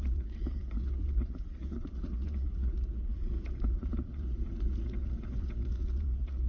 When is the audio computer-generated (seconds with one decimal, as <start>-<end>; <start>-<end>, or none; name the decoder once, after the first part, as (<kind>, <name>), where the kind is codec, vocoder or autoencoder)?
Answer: 0.0-6.5 (vocoder, Vocos)